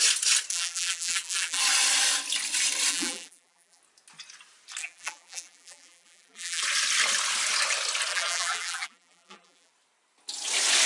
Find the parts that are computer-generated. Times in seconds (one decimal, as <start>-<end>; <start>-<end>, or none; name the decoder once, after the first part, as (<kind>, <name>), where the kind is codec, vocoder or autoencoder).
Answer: 0.5-1.6 (vocoder, BigVGAN v2); 2.9-3.8; 4.8-6.6; 8.1-9.7